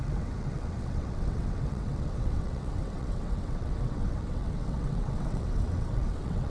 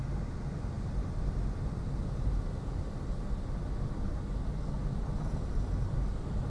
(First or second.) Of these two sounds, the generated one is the first